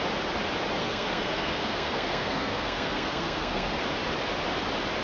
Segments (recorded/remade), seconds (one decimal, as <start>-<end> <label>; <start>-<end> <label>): 0.0-0.8 recorded; 0.8-3.8 remade; 3.8-5.0 recorded